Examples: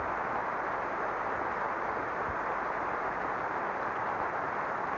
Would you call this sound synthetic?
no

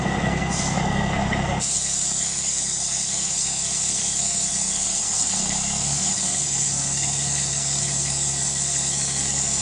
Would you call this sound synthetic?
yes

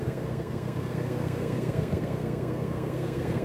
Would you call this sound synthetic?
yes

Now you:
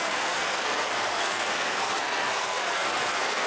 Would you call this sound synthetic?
yes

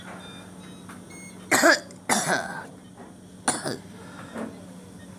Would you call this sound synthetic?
no